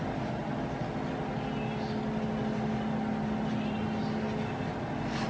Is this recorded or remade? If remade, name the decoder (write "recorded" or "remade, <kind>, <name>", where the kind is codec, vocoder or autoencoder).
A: recorded